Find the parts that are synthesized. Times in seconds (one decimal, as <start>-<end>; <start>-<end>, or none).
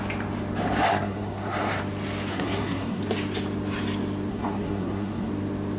0.9-1.8; 2.3-3.0; 4.3-5.3